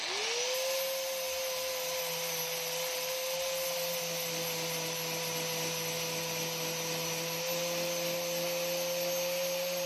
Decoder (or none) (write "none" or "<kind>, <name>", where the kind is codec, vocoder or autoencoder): none